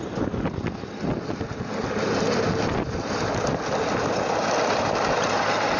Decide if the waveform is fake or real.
real